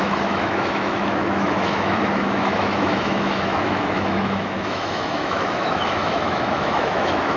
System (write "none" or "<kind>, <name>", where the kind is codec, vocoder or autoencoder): autoencoder, DAC-VAE